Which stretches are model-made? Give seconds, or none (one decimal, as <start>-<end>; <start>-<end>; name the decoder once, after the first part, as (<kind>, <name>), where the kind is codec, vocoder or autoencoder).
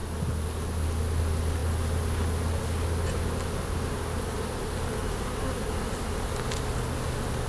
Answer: 5.0-6.3 (vocoder, BigVGAN v2)